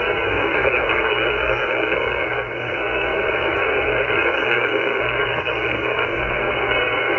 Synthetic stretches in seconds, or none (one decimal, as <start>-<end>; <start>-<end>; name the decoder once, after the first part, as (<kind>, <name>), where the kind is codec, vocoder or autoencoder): 0.0-7.2 (codec, SNAC)